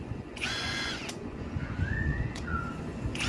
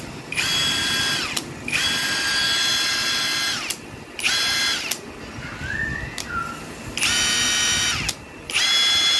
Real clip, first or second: second